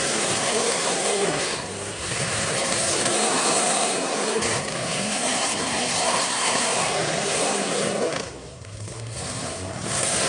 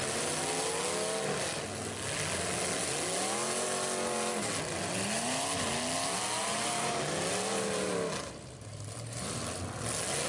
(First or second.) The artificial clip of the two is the first